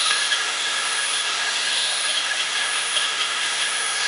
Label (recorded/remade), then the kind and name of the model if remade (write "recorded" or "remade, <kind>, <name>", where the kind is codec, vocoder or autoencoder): remade, autoencoder, DAC-VAE